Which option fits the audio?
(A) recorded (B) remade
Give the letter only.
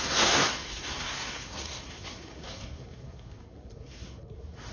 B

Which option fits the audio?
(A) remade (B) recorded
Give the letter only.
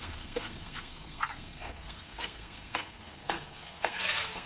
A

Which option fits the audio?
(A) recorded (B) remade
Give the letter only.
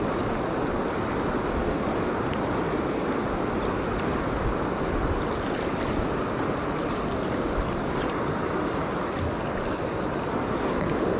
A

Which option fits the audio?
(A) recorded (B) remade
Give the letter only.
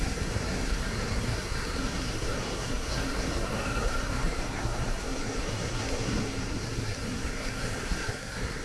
B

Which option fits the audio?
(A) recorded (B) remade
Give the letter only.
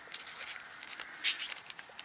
A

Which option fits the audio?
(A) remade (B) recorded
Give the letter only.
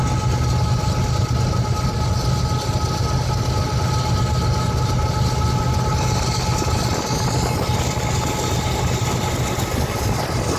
B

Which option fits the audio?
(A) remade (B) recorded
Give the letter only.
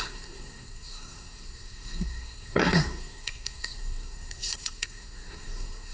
A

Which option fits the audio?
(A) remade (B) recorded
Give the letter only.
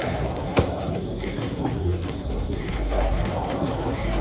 A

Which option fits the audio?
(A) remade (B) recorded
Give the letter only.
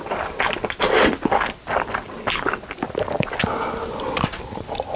B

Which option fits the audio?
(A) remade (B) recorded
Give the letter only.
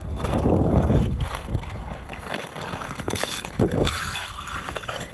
A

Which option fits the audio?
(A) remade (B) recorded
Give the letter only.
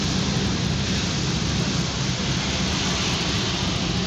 B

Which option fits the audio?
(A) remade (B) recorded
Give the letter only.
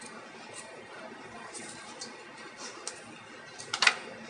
B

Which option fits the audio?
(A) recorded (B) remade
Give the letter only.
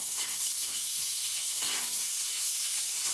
B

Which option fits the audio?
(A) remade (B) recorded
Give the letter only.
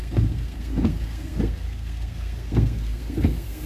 A